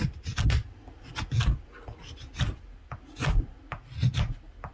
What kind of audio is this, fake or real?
real